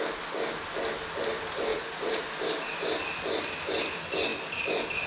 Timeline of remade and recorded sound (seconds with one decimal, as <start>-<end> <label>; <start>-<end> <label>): 0.0-1.7 recorded; 1.7-2.2 remade; 2.2-5.1 recorded